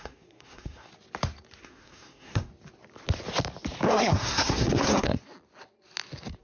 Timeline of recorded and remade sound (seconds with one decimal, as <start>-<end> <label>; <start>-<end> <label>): 0.0-0.9 remade; 0.9-1.6 recorded; 1.6-2.5 remade; 2.5-3.9 recorded; 3.9-5.2 remade; 5.2-6.4 recorded